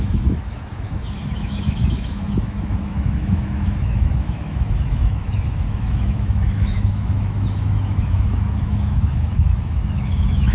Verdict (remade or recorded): remade